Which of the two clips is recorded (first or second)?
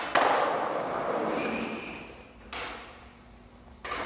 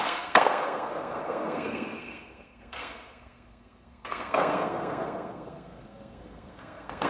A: first